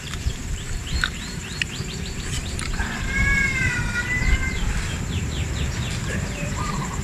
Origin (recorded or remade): remade